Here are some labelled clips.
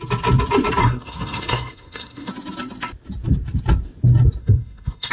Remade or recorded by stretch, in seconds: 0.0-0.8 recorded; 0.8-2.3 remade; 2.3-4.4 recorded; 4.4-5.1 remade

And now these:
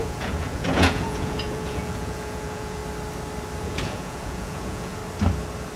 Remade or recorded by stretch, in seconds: 0.0-2.8 remade; 2.8-3.6 recorded; 3.6-5.0 remade; 5.0-5.8 recorded

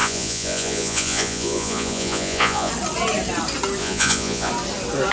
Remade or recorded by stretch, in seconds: 0.0-2.7 remade; 2.7-3.8 recorded; 3.8-4.5 remade; 4.5-5.1 recorded

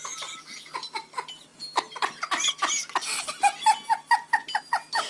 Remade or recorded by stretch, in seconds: 0.0-5.1 recorded